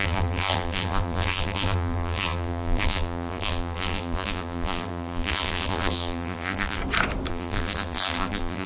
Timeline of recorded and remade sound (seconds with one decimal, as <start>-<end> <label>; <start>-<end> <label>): 0.0-6.8 remade; 6.8-7.3 recorded; 7.3-8.7 remade